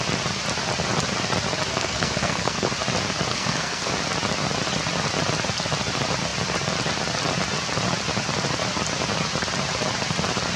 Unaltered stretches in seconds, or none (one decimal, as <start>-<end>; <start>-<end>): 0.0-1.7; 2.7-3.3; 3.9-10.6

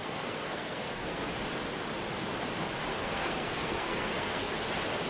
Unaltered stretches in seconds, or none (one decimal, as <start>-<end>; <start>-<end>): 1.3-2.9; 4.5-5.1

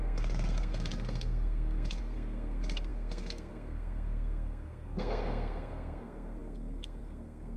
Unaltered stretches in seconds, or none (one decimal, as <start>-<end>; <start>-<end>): none

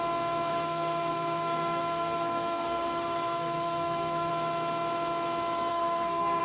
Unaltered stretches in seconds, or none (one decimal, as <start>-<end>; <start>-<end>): 0.0-0.5; 4.3-5.7

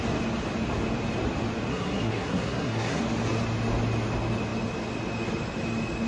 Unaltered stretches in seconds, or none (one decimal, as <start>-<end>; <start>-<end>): 0.0-1.7; 3.0-6.1

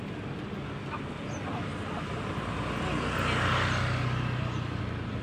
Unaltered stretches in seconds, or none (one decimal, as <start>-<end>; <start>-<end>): 0.0-5.2

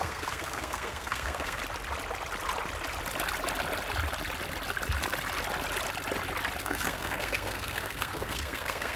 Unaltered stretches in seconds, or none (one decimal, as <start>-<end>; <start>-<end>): 1.6-6.6